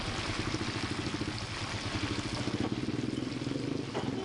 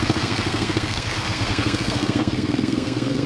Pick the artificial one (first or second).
second